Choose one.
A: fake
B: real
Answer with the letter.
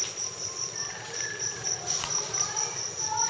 A